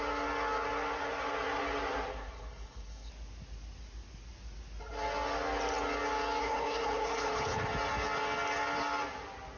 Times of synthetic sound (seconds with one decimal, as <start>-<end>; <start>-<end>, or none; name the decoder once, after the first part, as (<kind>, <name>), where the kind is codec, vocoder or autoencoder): 2.1-3.1 (codec, HILCodec); 6.4-7.7